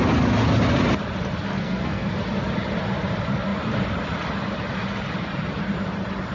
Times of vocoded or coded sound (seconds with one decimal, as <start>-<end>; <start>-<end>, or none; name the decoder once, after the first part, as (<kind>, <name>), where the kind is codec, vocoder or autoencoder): 1.5-2.1 (codec, SNAC)